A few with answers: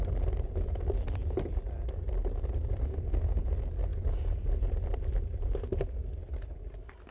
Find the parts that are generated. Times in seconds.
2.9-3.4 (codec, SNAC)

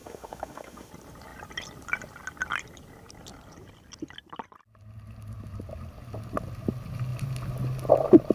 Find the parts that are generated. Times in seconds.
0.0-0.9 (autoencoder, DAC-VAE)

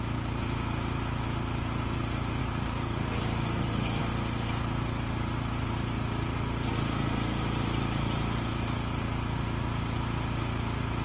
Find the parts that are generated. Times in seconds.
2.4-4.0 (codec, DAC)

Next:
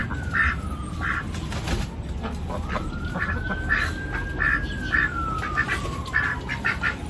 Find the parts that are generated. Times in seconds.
none

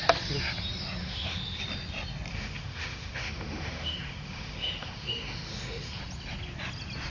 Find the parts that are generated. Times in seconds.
1.0-1.6 (autoencoder, DAC-VAE); 2.3-6.0

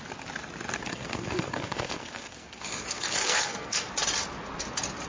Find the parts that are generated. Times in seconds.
0.8-3.9 (codec, SNAC)

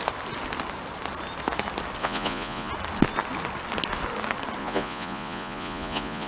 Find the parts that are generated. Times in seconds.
2.0-2.7 (vocoder, Vocos); 4.6-6.3